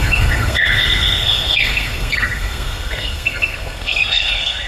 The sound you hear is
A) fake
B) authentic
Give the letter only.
A